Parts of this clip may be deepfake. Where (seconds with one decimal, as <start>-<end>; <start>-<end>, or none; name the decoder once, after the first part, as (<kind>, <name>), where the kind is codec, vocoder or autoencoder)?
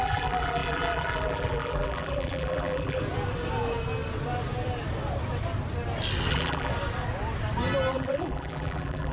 0.0-3.0 (vocoder, BigVGAN v2); 6.3-6.7; 7.9-9.1